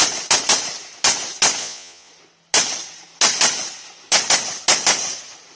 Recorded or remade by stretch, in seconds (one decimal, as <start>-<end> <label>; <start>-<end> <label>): 0.0-1.6 recorded; 1.6-2.1 remade; 2.1-5.6 recorded